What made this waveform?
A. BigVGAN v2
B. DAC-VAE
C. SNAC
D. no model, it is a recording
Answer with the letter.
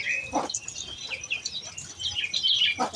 D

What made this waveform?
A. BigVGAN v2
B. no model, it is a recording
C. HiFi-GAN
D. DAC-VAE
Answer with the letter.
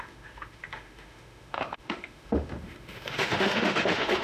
D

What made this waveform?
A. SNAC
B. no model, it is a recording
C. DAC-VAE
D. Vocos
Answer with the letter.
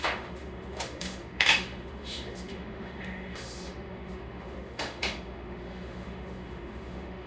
C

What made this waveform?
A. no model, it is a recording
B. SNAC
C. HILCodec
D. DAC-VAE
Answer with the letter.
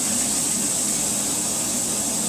A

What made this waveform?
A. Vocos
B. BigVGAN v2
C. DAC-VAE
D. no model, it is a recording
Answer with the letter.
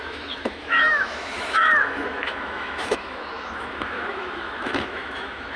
C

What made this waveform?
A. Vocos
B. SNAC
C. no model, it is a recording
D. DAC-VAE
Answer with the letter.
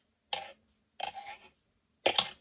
C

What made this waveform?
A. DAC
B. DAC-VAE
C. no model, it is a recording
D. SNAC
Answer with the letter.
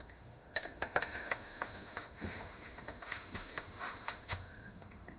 B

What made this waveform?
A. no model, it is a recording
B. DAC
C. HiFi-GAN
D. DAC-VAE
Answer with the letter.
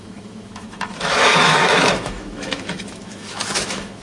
D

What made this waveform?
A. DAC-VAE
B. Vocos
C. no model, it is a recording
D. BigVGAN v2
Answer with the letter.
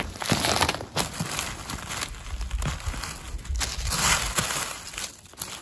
C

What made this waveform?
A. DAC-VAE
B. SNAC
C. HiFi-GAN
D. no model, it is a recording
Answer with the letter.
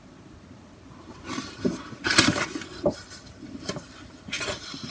D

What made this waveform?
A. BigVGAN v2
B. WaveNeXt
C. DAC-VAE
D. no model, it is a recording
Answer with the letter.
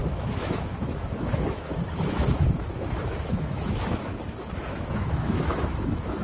C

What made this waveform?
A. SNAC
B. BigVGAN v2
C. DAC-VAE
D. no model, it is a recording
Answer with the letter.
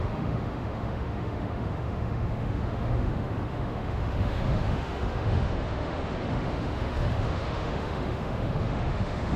C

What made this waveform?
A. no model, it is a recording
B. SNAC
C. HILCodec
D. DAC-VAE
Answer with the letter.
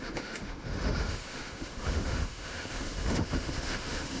D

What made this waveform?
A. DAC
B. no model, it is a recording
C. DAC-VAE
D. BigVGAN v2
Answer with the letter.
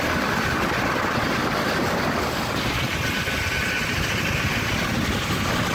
B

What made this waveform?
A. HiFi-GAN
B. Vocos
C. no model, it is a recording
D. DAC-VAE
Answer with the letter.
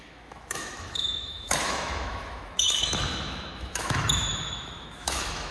D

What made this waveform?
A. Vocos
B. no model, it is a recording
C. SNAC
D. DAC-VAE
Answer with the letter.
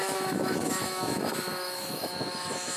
D